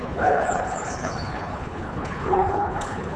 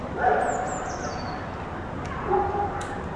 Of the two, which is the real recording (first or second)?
second